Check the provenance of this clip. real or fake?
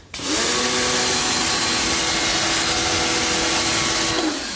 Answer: real